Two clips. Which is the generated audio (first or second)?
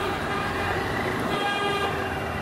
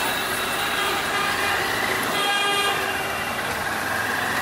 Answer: first